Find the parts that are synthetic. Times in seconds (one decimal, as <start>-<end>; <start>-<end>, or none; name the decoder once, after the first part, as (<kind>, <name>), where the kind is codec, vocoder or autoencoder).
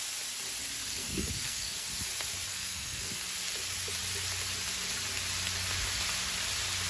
0.9-1.9 (codec, SNAC); 2.5-3.1